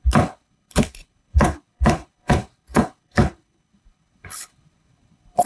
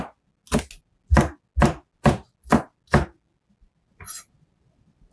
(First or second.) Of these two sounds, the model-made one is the first